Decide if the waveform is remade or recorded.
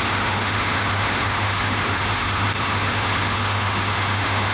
remade